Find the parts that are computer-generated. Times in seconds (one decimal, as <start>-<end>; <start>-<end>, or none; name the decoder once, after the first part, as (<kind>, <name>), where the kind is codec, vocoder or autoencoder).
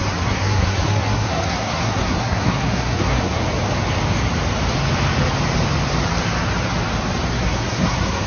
0.0-3.4 (codec, SNAC); 7.3-8.3